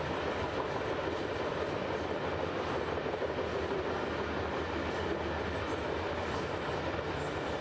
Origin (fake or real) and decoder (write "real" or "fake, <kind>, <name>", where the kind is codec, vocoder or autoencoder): real